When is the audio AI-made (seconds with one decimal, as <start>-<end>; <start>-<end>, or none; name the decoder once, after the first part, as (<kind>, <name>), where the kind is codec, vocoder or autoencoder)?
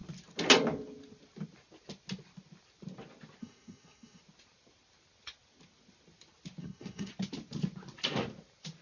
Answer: 3.4-4.2 (codec, SNAC); 6.6-7.1